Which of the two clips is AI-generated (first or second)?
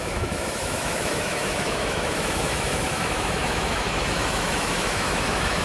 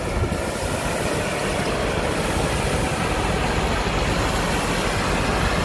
first